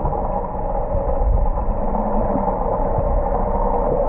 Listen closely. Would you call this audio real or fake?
real